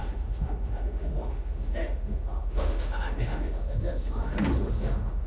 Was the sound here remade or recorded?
remade